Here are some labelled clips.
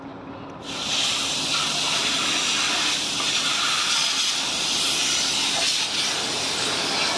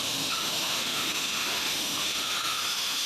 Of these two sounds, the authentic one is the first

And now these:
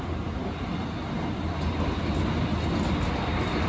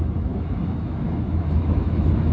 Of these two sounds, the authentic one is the first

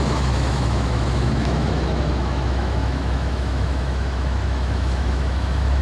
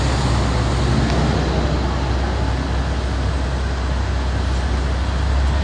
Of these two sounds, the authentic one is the second